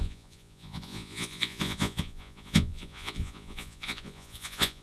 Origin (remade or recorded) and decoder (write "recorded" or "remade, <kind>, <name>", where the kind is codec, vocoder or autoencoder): remade, vocoder, Vocos